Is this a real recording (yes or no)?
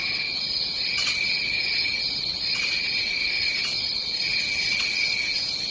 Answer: yes